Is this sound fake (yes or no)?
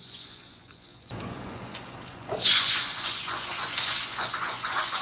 yes